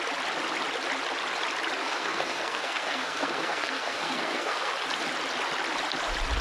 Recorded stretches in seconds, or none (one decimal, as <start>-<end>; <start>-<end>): 0.0-1.8; 4.7-6.4